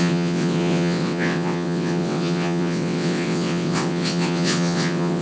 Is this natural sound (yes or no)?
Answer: no